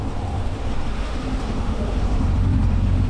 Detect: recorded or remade remade